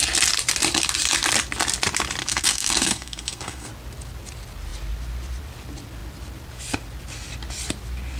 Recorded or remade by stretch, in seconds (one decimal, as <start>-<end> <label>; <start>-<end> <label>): 0.0-2.2 recorded; 2.2-3.7 remade; 3.7-8.2 recorded